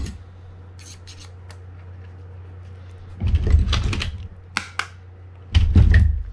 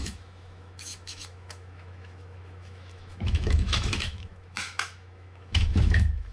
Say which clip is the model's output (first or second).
second